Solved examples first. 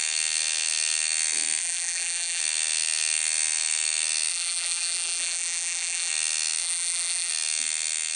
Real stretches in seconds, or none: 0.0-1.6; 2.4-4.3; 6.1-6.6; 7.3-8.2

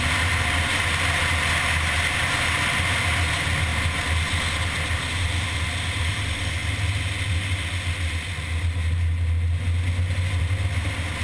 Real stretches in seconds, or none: 0.0-11.2

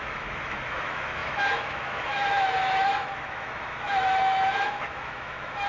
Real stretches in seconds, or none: none